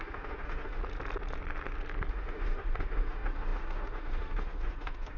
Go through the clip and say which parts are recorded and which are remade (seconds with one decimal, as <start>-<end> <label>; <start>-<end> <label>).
0.0-0.8 remade; 0.8-2.1 recorded; 2.1-5.2 remade